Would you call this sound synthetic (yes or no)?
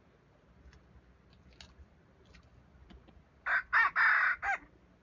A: no